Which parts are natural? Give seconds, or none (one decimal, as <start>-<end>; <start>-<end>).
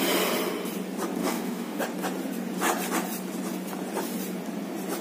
0.0-1.2; 1.8-5.0